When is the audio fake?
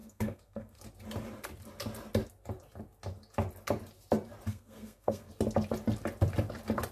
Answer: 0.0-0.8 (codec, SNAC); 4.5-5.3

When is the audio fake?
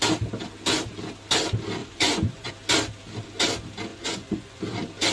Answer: 1.8-2.5 (vocoder, Vocos); 3.9-4.6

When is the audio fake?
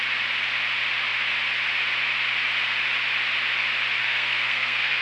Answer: 4.0-5.0 (codec, SNAC)